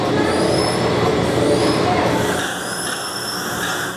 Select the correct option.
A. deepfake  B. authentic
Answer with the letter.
B